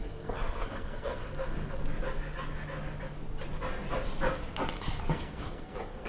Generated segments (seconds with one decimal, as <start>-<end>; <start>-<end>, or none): 0.0-1.8; 5.1-6.1